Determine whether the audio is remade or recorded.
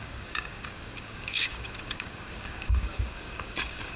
remade